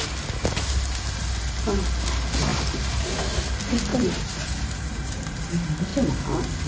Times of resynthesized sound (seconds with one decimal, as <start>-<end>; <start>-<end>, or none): 2.5-3.2; 3.9-5.4